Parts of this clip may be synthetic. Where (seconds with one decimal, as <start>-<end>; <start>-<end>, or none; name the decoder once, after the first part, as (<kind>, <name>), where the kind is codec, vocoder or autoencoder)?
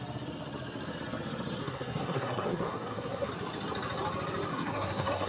1.6-3.3 (codec, SNAC); 4.5-5.3